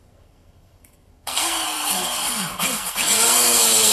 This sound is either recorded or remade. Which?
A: remade